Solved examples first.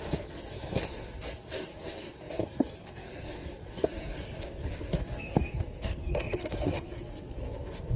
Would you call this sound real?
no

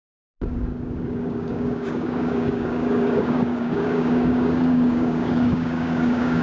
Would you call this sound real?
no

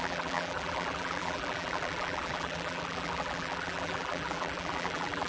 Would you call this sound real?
no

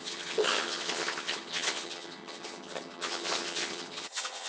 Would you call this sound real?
no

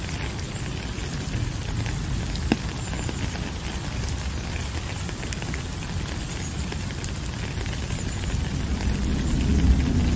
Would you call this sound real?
yes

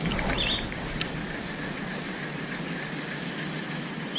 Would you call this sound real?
yes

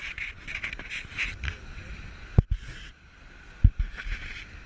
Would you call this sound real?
yes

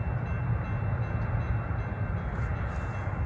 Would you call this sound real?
yes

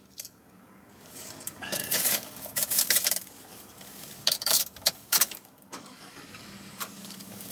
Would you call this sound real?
no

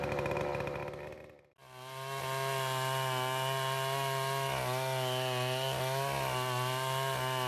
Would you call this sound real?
yes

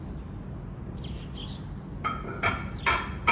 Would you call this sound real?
yes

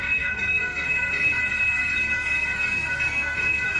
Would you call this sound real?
no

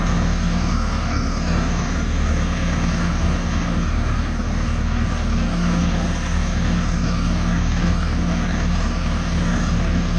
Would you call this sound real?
no